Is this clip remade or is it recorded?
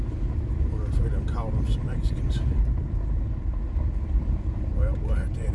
recorded